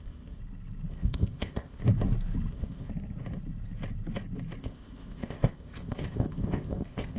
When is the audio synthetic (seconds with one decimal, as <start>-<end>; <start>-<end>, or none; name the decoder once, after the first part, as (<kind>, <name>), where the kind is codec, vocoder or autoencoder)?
0.0-0.4 (codec, ZipCodec); 0.9-1.8; 2.5-2.9; 4.6-7.2